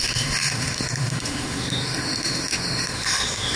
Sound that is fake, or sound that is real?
fake